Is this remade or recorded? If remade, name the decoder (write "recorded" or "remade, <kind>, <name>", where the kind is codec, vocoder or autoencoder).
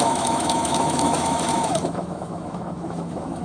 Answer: remade, autoencoder, DAC-VAE